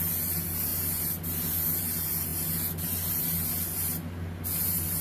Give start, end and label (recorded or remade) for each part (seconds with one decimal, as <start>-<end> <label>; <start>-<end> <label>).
0.0-5.0 recorded